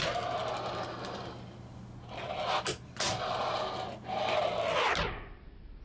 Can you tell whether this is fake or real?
real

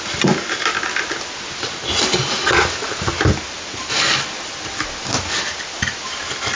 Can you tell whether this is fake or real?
real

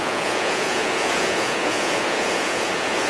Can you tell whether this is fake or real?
fake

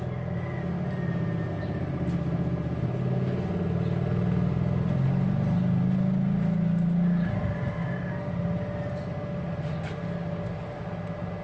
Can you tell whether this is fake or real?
real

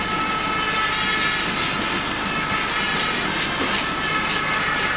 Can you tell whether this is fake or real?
real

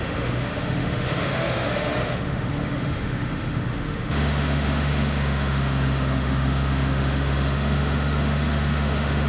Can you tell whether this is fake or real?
fake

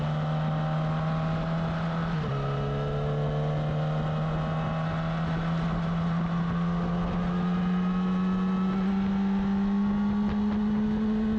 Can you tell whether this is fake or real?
real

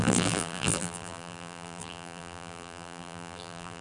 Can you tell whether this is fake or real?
fake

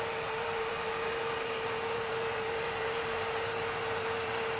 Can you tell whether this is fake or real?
real